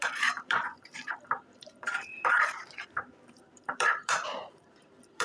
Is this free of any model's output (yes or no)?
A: no